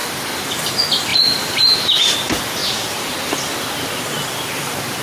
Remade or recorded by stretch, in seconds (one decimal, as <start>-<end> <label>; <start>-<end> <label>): 0.0-1.1 recorded; 1.1-2.0 remade; 2.0-2.6 recorded; 2.6-3.2 remade; 3.2-5.0 recorded